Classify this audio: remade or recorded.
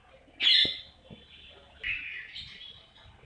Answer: recorded